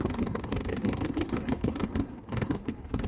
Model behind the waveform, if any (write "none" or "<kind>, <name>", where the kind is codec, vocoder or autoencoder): codec, SNAC